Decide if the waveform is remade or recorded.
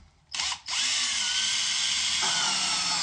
recorded